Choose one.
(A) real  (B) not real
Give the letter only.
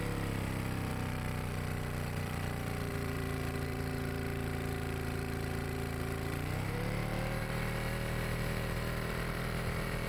B